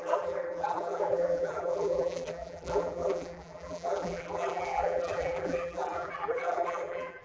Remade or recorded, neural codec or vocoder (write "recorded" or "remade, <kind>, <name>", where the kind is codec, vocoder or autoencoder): remade, vocoder, BigVGAN v2